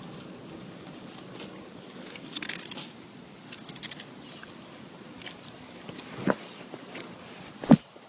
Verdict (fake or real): real